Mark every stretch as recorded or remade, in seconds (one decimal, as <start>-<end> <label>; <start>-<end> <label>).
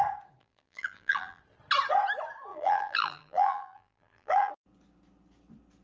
0.0-0.4 recorded; 0.4-1.4 remade; 1.4-2.5 recorded; 2.5-4.5 remade; 4.5-5.8 recorded